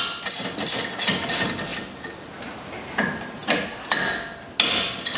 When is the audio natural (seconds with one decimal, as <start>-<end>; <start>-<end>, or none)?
0.0-5.2